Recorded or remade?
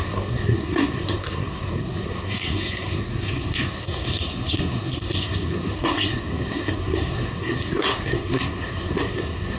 remade